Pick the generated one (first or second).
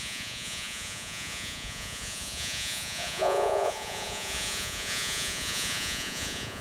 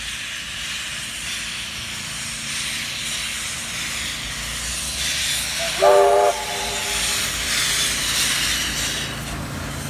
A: first